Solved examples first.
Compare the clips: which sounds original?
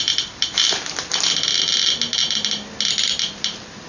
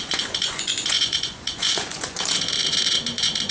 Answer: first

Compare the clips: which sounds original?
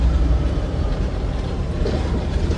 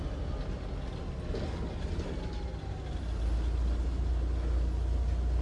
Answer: second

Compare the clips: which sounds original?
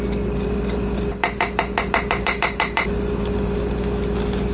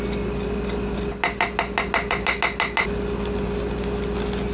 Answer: second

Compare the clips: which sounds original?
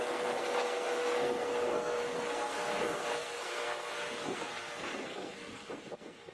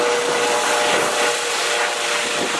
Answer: second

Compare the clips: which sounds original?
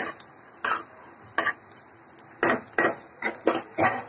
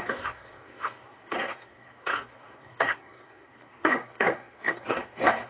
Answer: first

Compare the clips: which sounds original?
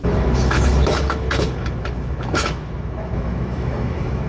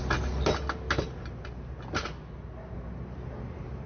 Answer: second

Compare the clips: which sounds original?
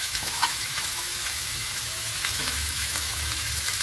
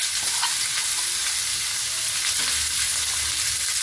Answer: second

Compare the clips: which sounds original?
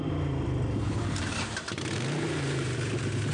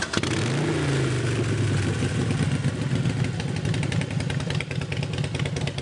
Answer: second